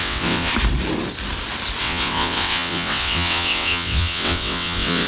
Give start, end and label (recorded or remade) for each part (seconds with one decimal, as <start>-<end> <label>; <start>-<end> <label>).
0.0-0.5 remade; 0.5-1.8 recorded; 1.8-5.1 remade